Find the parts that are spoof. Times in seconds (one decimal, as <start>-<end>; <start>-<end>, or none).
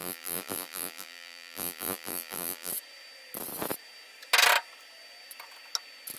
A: 0.0-2.7